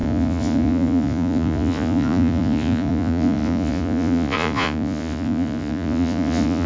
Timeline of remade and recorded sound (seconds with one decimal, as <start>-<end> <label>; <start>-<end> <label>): 0.0-6.7 remade